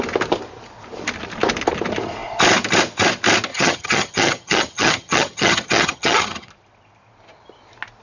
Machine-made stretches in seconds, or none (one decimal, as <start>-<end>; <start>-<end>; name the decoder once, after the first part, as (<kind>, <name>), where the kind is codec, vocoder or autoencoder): 3.5-6.5 (vocoder, HiFi-GAN)